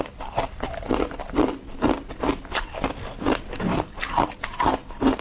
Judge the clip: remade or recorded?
recorded